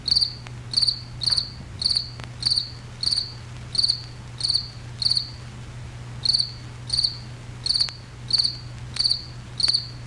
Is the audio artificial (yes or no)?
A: no